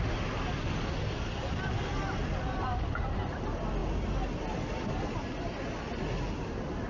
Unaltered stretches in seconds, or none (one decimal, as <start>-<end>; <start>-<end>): 0.0-6.9